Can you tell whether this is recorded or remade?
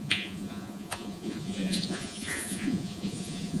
remade